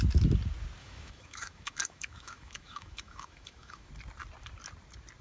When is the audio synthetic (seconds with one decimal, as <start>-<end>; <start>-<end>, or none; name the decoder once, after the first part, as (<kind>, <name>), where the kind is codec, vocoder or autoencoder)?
0.8-3.9 (autoencoder, DAC-VAE)